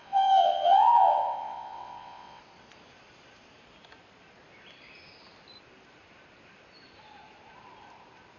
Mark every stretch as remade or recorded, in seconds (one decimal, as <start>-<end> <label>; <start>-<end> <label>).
0.0-2.4 remade; 2.4-8.4 recorded